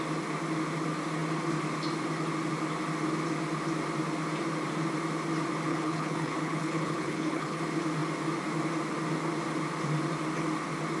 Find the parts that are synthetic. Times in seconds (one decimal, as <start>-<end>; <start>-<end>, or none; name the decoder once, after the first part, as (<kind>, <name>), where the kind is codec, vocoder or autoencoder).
5.7-7.6 (codec, HILCodec)